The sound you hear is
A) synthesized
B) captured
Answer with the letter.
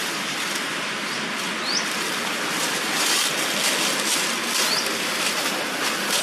B